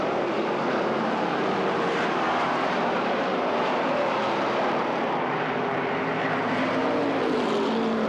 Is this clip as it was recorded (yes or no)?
no